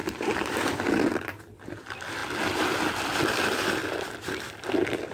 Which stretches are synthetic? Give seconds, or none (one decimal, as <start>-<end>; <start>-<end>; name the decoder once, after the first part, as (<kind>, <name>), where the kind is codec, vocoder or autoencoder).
0.0-2.2 (vocoder, BigVGAN v2); 3.0-5.1